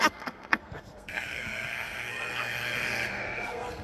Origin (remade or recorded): remade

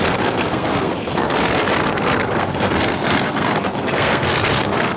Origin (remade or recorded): remade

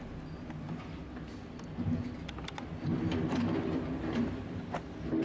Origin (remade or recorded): recorded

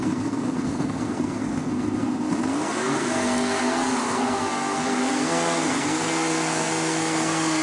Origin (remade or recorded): remade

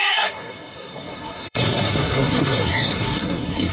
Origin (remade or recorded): remade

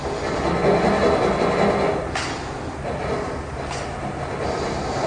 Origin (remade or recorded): recorded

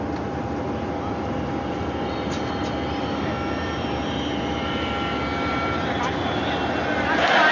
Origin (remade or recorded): recorded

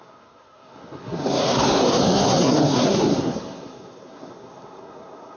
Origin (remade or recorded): remade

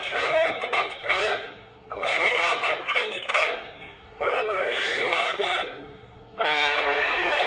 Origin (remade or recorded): remade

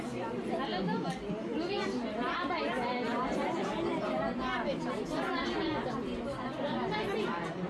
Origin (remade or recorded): recorded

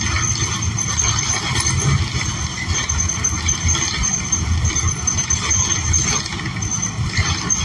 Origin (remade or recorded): recorded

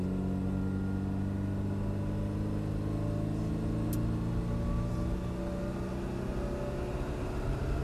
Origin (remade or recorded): recorded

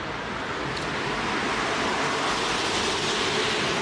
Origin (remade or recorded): recorded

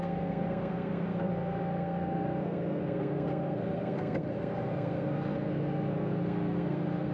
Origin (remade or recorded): remade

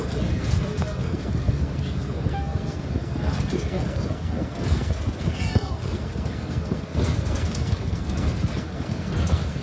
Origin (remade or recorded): remade